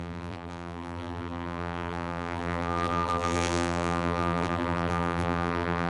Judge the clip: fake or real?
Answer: fake